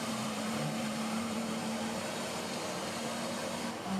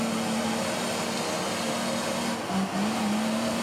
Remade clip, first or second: first